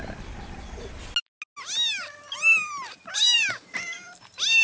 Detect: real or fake real